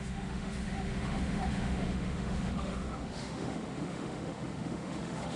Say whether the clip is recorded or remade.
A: remade